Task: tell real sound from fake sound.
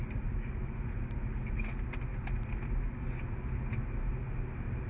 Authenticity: real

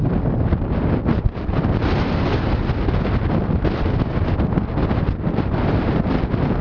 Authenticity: real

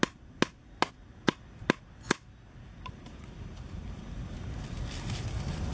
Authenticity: real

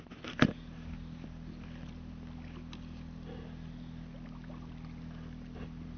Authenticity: real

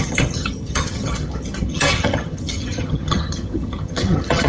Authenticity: fake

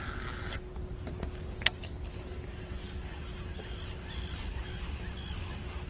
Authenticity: real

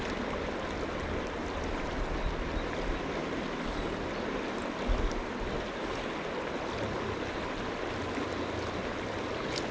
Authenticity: real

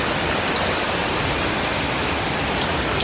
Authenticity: real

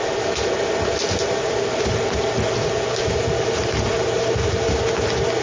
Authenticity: real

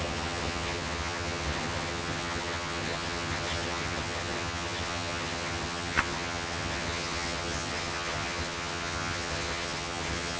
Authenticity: fake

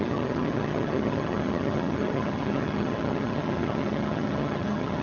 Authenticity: fake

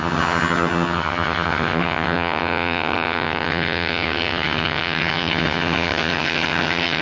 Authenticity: fake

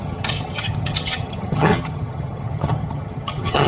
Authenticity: fake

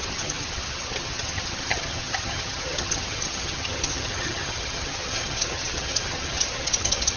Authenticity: fake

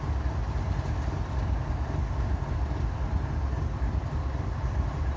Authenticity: real